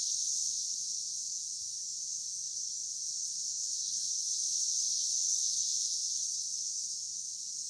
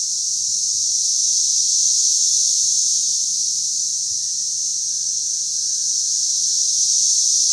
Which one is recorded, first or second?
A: second